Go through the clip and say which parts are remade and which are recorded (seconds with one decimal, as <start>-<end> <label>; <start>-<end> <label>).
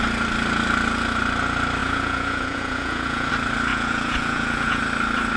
0.0-1.8 recorded; 1.8-3.3 remade; 3.3-3.7 recorded; 3.7-4.8 remade; 4.8-5.4 recorded